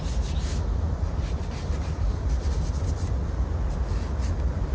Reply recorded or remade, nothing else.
recorded